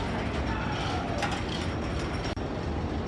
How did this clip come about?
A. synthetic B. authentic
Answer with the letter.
B